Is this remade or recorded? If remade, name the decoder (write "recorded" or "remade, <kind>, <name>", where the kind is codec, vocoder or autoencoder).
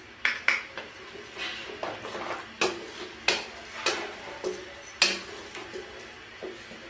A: recorded